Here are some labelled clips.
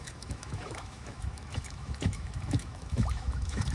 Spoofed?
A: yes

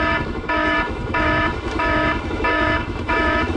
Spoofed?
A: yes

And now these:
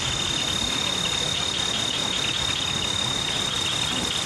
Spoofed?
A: no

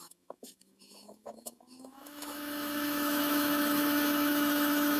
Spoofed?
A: yes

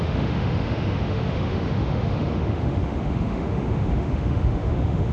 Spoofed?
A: yes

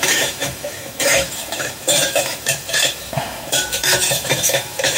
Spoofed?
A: yes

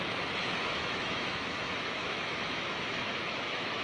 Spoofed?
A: yes